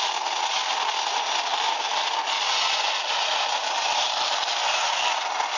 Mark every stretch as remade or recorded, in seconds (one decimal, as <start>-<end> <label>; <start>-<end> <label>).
0.0-5.6 recorded